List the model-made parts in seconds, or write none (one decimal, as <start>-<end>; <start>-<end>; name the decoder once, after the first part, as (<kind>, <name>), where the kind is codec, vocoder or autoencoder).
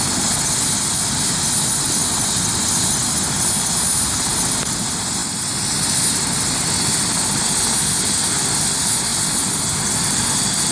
none